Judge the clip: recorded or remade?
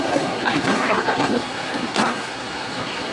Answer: remade